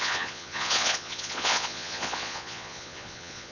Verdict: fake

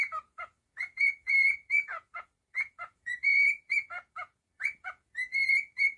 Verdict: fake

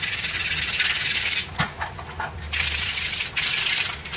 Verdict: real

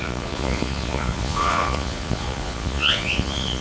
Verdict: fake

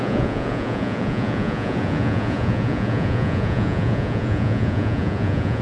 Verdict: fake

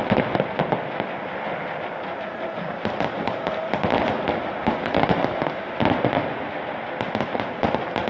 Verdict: real